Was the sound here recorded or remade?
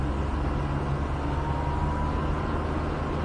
recorded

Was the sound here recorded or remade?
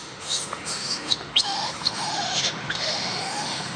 remade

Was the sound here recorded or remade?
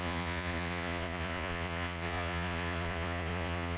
remade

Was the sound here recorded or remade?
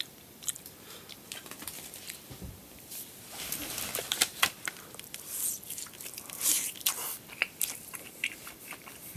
remade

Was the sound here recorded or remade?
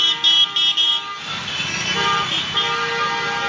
recorded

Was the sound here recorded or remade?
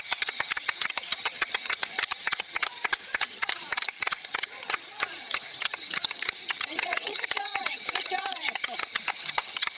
remade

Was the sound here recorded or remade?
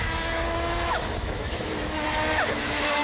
remade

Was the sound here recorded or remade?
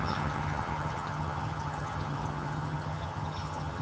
remade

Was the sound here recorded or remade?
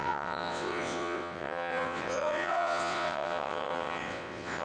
remade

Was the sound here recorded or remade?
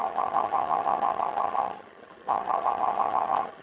remade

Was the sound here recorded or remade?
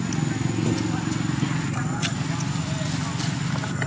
recorded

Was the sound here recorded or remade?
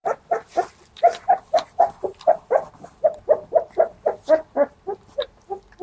remade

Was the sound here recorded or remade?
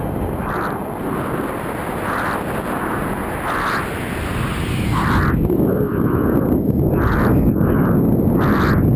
recorded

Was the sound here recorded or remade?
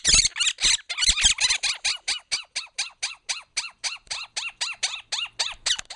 recorded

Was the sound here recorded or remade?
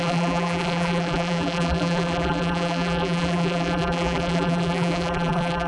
remade